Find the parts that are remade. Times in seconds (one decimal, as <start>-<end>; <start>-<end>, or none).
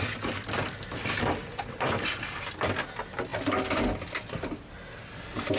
none